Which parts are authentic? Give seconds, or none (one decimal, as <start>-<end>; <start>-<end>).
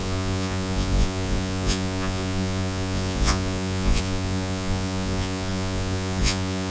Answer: none